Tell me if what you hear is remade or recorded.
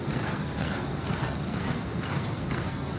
remade